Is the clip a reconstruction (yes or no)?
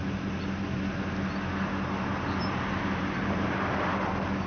no